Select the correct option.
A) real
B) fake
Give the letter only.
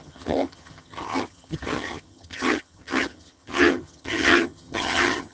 B